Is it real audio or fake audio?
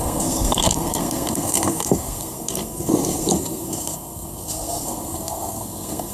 fake